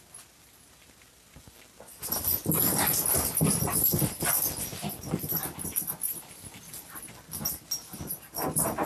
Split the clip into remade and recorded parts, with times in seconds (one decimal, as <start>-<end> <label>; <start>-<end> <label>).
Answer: 0.0-2.6 recorded; 2.6-4.0 remade; 4.0-4.7 recorded; 4.7-7.1 remade; 7.1-8.9 recorded